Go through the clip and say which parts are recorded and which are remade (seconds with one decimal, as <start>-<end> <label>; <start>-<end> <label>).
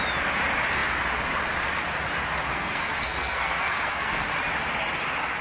0.0-2.5 recorded; 2.5-4.3 remade; 4.3-5.4 recorded